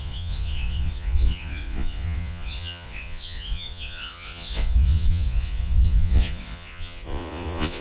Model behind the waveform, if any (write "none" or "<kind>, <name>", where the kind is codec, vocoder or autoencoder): vocoder, Vocos